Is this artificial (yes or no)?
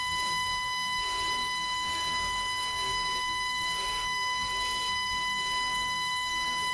yes